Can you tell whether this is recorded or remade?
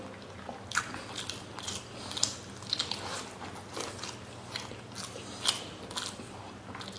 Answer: recorded